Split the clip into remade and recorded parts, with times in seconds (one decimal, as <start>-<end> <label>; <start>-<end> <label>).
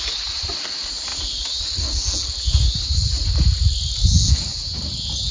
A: 0.0-5.3 recorded